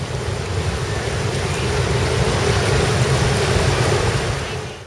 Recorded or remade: recorded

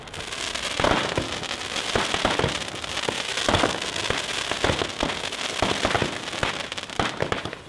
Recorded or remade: recorded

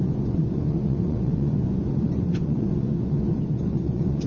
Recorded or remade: remade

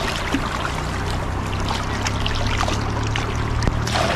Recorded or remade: recorded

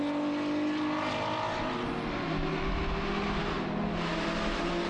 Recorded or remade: recorded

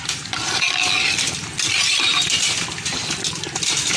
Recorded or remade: recorded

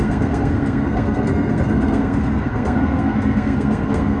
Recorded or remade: remade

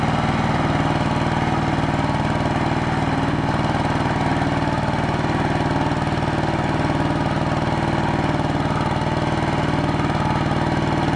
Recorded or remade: recorded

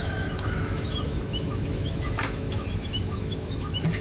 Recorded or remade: remade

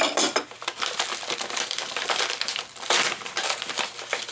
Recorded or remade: remade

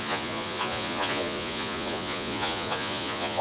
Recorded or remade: remade